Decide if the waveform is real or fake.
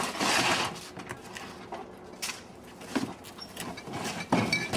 real